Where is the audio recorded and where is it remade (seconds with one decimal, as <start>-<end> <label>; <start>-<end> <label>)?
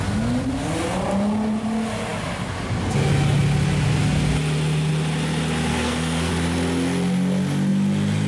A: 0.0-5.7 recorded; 5.7-6.3 remade; 6.3-8.3 recorded